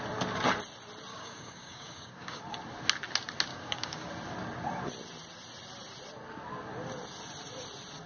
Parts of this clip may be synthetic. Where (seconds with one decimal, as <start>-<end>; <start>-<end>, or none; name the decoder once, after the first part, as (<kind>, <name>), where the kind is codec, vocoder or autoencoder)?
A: 1.1-2.4 (codec, DAC); 3.5-4.1